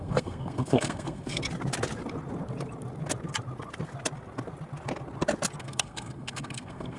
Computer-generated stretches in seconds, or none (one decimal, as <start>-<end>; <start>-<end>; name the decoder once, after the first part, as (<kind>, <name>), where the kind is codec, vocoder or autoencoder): 0.0-1.4 (codec, SNAC); 5.6-7.0